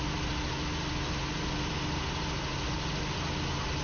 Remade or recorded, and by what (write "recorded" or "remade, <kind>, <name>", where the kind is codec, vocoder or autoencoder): recorded